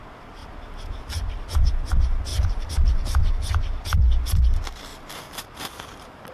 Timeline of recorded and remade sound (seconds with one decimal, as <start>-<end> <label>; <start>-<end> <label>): 0.0-2.3 recorded; 2.3-3.3 remade; 3.3-4.9 recorded; 4.9-6.3 remade